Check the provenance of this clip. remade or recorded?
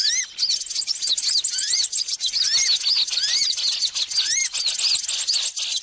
recorded